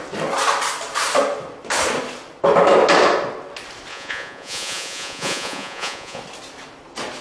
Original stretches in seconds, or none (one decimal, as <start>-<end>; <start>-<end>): 0.0-3.9; 6.2-7.2